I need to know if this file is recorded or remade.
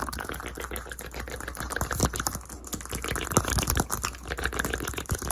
recorded